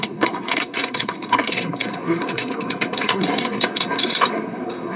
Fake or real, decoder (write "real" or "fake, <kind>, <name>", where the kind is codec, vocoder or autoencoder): fake, codec, SNAC